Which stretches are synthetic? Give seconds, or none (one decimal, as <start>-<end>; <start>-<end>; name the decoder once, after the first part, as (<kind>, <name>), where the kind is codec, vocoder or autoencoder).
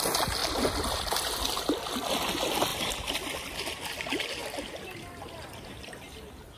0.4-1.8 (vocoder, BigVGAN v2); 2.7-3.8